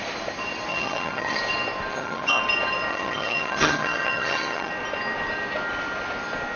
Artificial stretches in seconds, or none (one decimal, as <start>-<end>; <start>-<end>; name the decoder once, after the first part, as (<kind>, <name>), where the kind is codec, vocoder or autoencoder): 0.7-1.4 (vocoder, HiFi-GAN); 1.9-2.4; 2.9-4.7